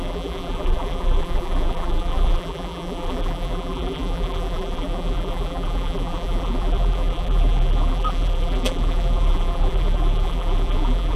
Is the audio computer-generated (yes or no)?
yes